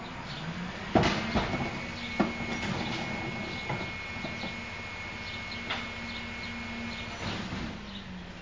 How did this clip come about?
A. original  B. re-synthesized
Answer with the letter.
A